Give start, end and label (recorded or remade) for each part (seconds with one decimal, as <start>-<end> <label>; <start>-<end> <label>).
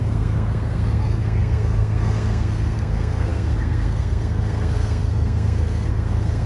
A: 0.0-6.5 remade